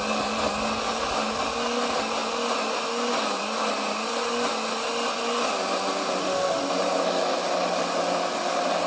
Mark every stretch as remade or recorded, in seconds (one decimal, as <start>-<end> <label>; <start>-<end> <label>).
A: 0.0-6.2 recorded; 6.2-6.7 remade; 6.7-8.9 recorded